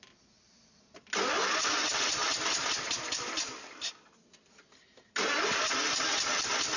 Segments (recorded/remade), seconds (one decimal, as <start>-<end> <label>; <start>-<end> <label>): 0.0-6.8 recorded